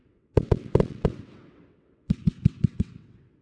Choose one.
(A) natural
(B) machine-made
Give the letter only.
B